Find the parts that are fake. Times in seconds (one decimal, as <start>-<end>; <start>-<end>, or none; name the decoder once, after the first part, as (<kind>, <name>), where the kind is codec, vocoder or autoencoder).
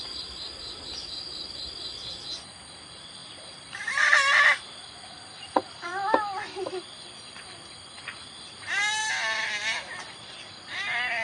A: 3.2-5.9 (vocoder, BigVGAN v2)